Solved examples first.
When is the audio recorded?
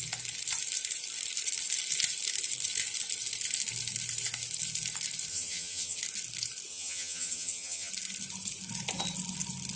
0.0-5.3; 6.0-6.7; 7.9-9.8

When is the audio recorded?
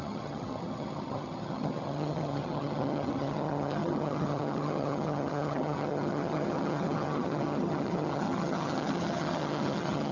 none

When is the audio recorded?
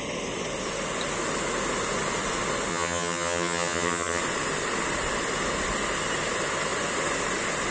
0.0-2.7; 4.2-7.7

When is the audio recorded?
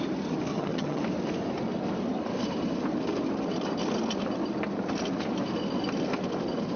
0.0-0.5; 1.0-6.8